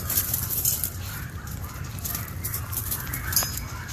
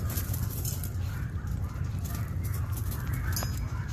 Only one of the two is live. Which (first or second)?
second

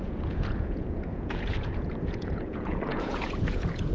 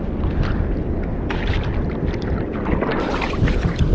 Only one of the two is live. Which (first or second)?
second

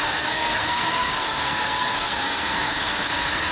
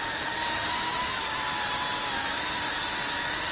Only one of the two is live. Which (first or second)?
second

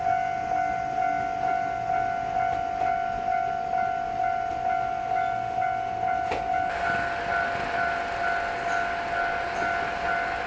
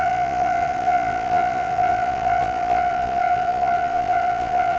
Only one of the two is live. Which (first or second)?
first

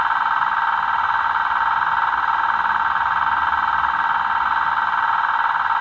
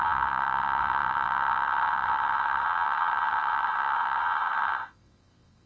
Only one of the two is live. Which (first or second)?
first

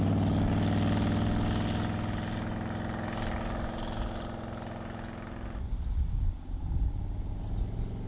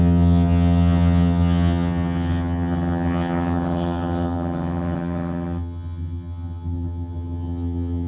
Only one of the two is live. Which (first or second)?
first